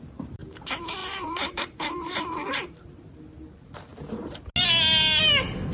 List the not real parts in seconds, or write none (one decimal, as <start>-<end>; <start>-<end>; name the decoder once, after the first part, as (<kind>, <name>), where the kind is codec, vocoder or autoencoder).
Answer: 1.0-2.8 (vocoder, BigVGAN v2)